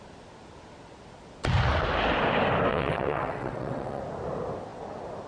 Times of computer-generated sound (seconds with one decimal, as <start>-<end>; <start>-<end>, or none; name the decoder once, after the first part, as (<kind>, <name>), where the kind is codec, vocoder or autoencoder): 2.7-4.0 (vocoder, WaveNeXt)